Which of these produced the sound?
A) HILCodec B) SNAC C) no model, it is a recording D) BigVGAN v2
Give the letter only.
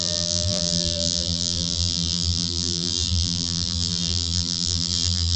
D